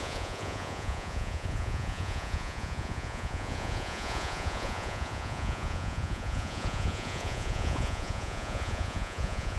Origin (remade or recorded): remade